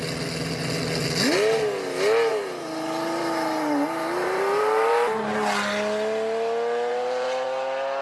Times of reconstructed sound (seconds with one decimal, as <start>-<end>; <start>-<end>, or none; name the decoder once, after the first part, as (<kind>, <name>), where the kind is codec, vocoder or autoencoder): 2.3-5.2 (vocoder, BigVGAN v2); 6.9-8.0